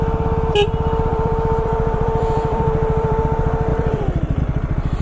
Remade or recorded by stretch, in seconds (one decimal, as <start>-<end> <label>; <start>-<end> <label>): 0.0-1.1 recorded; 1.1-3.2 remade; 3.2-3.7 recorded; 3.7-4.4 remade; 4.4-5.0 recorded